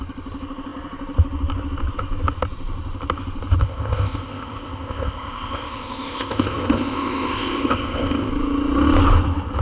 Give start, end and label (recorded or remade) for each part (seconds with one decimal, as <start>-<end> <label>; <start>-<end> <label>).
0.0-3.6 recorded; 3.6-8.3 remade; 8.3-9.6 recorded